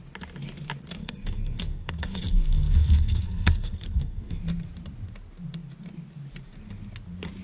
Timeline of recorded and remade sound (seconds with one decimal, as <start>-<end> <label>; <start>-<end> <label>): 0.0-1.0 recorded; 1.0-4.4 remade; 4.4-7.4 recorded